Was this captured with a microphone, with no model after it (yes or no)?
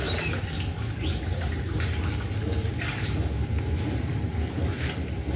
yes